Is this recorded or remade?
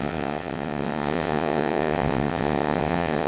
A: remade